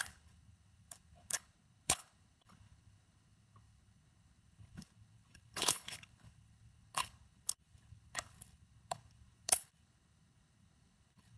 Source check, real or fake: fake